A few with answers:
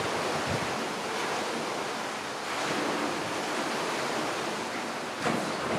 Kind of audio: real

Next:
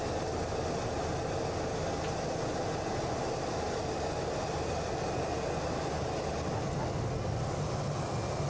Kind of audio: real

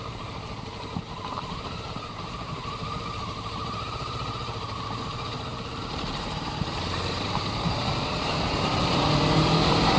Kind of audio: fake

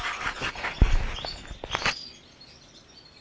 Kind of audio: real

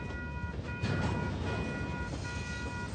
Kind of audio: real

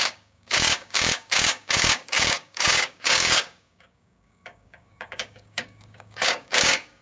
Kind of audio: fake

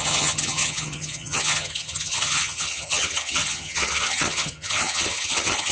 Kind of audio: fake